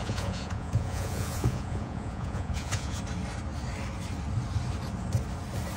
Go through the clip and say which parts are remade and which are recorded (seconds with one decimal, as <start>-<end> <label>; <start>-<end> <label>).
0.0-3.0 remade; 3.0-5.8 recorded